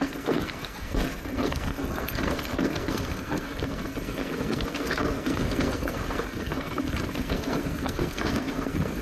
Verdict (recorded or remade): remade